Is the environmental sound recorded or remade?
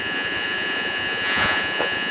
remade